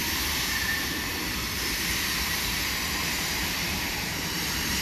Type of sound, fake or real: fake